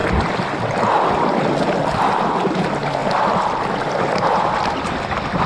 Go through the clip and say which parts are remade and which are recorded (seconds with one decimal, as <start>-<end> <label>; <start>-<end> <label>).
0.0-5.5 recorded